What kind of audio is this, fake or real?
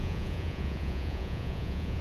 fake